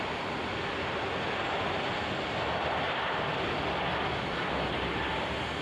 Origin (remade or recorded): recorded